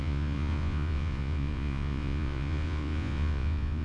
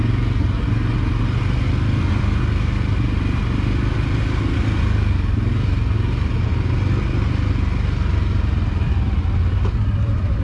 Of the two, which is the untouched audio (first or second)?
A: second